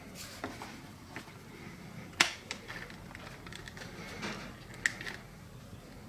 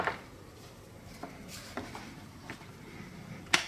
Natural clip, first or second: first